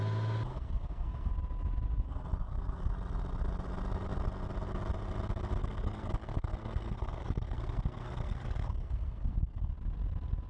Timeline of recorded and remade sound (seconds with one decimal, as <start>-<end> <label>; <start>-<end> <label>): 0.0-0.5 recorded; 0.5-1.3 remade; 1.3-2.4 recorded; 2.4-2.9 remade; 2.9-5.6 recorded; 5.6-9.7 remade; 9.7-10.5 recorded